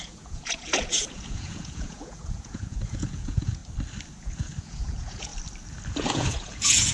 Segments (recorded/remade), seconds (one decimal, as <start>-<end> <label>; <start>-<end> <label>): 0.0-3.6 remade; 3.6-4.2 recorded; 4.2-5.3 remade; 5.3-5.9 recorded; 5.9-6.9 remade

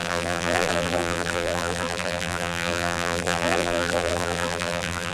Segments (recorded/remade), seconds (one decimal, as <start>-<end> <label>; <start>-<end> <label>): 0.0-5.1 remade